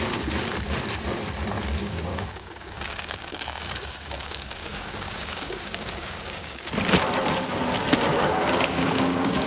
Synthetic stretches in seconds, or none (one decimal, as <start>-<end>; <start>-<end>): 1.8-6.7; 8.1-9.5